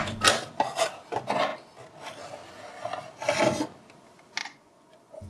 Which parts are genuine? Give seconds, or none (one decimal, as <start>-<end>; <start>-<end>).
0.0-4.4